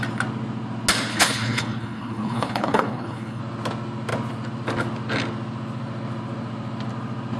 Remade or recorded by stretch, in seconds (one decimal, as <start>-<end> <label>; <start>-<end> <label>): 0.0-1.1 recorded; 1.1-3.4 remade; 3.4-7.4 recorded